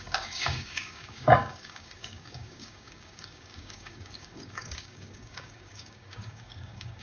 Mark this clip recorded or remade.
remade